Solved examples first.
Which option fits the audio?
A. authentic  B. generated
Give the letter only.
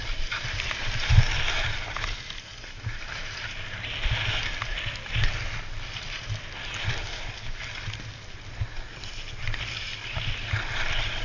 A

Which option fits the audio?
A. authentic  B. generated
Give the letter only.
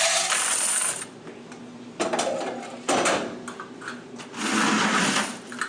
A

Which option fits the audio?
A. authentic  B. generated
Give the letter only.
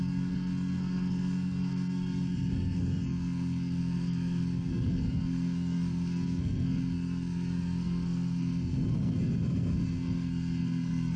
B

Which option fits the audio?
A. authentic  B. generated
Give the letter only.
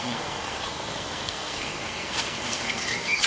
B